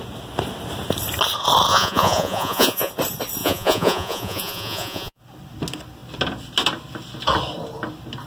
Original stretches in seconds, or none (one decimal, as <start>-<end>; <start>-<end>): 0.0-1.7; 2.9-3.4; 5.2-8.3